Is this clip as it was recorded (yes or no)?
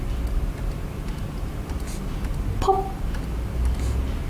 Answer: yes